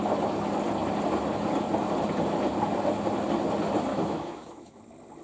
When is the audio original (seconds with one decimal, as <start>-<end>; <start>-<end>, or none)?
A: 0.0-3.9; 4.8-5.2